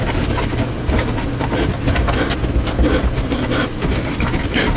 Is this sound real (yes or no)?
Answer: yes